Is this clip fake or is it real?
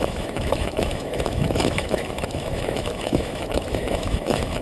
fake